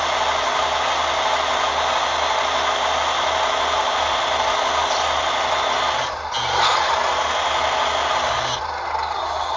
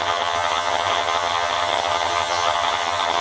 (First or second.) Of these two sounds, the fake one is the second